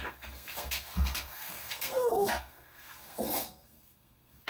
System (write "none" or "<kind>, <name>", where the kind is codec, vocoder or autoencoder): codec, SNAC